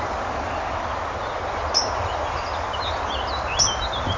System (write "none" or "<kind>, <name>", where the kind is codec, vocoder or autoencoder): none